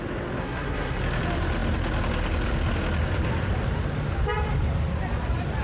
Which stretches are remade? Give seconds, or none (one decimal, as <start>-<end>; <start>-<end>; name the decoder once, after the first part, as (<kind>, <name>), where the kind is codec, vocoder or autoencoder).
0.4-1.0 (codec, SNAC)